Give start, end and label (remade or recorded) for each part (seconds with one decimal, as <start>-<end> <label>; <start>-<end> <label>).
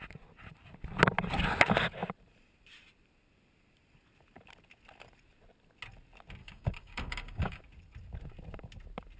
0.0-6.4 recorded; 6.4-7.6 remade; 7.6-9.2 recorded